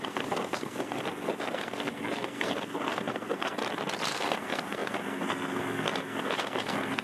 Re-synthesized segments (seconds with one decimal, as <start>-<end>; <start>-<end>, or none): 0.0-3.6; 4.1-7.0